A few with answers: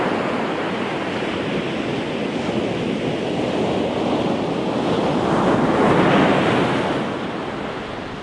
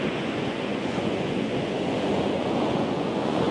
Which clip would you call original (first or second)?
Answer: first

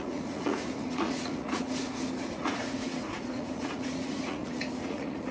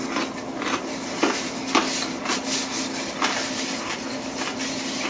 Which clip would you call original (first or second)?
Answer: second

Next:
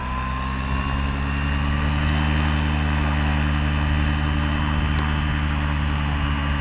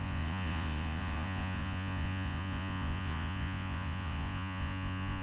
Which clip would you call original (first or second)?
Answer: first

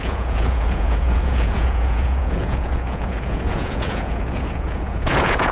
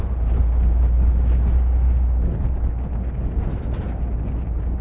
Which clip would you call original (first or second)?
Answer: second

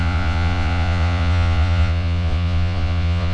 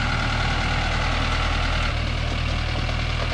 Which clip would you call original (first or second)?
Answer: second